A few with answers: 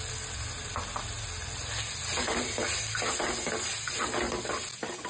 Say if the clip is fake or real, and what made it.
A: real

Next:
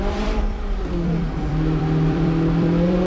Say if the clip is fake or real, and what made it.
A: fake, vocoder, BigVGAN v2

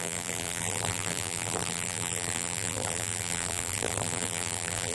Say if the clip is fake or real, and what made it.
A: fake, vocoder, BigVGAN v2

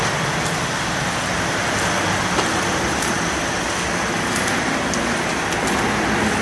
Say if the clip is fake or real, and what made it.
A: real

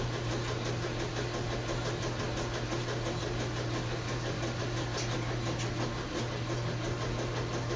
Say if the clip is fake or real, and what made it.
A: real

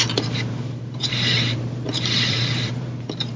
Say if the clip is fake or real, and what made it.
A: fake, vocoder, BigVGAN v2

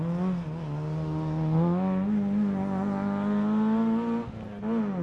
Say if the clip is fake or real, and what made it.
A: real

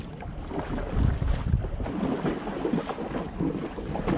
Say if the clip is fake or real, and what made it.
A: real